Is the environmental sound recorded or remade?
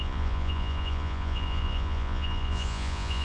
remade